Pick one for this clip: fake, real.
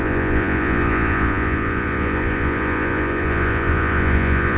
fake